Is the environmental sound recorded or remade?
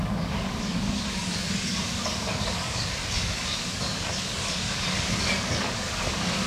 remade